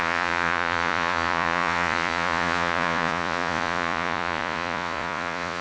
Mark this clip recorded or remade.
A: remade